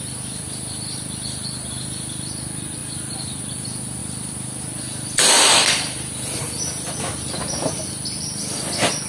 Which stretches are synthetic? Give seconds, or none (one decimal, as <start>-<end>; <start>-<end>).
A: 2.8-3.4; 4.0-6.4